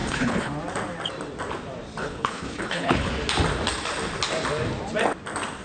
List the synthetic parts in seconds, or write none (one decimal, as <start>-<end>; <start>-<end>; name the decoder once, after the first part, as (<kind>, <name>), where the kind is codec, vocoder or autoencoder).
0.0-0.5 (codec, HILCodec); 2.0-3.1